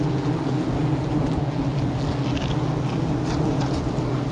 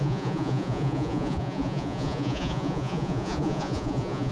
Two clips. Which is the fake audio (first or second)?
second